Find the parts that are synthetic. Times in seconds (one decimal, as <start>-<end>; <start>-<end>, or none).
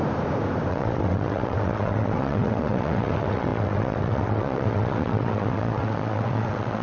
0.7-6.8